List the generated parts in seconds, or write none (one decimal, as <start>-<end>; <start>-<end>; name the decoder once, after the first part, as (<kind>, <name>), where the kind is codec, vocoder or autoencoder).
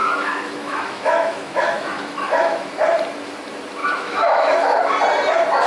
0.0-2.7 (autoencoder, DAC-VAE); 3.8-4.8